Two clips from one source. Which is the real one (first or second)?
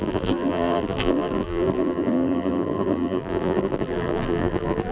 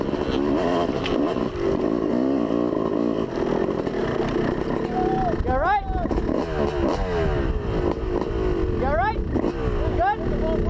second